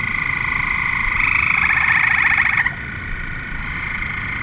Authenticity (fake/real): real